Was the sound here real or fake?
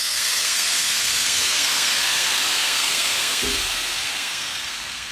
fake